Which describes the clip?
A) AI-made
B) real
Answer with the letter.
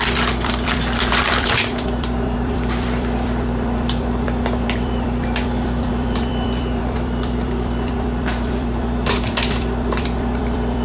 A